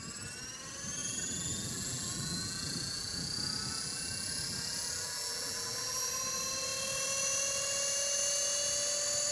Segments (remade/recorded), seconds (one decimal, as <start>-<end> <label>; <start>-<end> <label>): 0.0-1.0 recorded; 1.0-6.1 remade; 6.1-9.3 recorded